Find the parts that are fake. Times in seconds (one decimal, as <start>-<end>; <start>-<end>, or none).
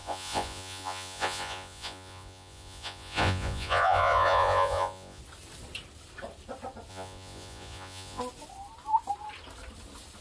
0.0-5.2; 6.9-8.2